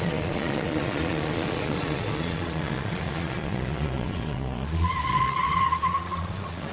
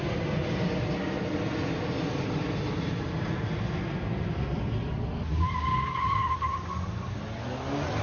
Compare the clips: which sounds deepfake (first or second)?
first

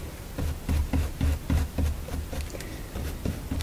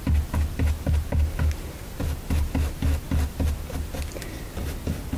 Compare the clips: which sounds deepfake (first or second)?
first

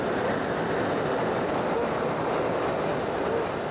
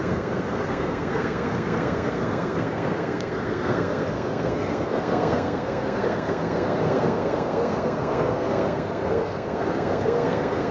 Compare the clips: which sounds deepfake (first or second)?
second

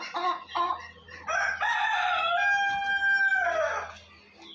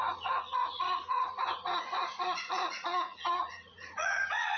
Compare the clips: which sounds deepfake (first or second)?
second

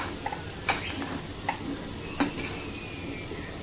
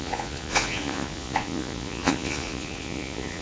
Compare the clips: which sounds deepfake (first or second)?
second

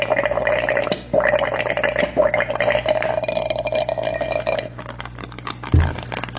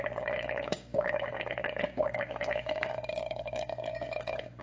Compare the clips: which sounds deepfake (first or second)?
second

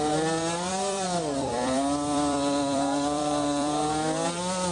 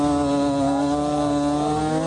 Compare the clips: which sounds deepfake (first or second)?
first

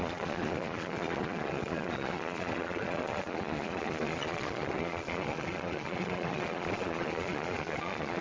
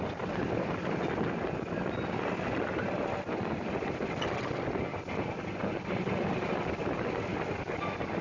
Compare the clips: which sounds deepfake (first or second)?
first